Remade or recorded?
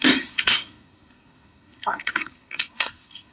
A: remade